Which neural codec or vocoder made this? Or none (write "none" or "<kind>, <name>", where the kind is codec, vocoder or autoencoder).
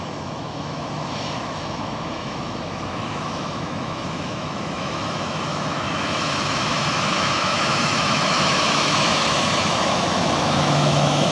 autoencoder, DAC-VAE